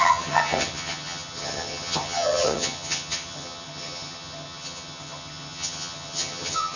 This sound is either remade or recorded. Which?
remade